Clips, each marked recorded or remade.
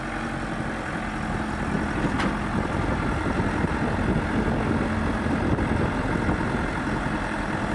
recorded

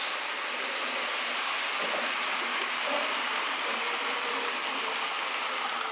recorded